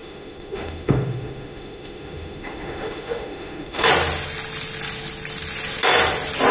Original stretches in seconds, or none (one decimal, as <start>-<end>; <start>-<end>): 3.9-6.5